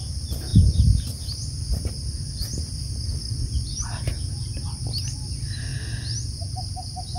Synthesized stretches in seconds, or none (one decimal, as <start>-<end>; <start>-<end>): none